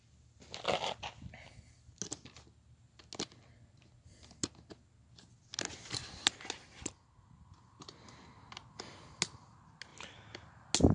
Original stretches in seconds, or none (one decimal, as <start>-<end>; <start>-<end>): 0.0-10.9